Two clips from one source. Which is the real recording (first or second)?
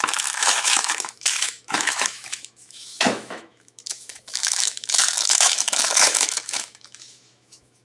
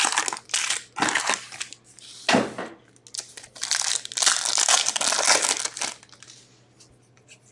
second